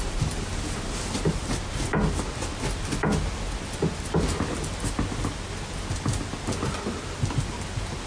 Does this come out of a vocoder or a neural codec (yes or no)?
no